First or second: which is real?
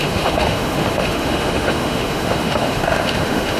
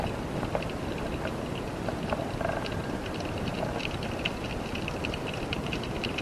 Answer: second